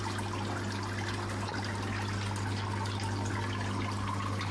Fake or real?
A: real